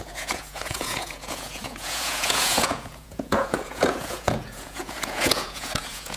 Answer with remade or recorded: remade